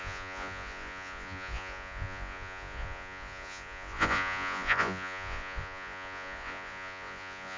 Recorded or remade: remade